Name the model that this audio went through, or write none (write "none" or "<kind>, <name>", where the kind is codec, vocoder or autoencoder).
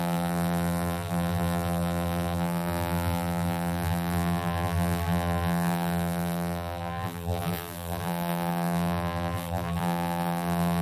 vocoder, BigVGAN v2